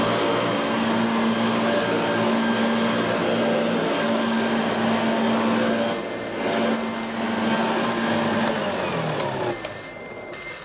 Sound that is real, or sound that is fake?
real